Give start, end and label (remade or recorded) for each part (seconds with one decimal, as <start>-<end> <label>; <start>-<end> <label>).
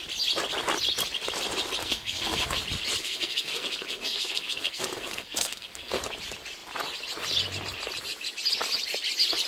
0.0-1.8 recorded; 1.8-2.6 remade; 2.6-3.0 recorded; 3.0-6.0 remade; 6.0-9.5 recorded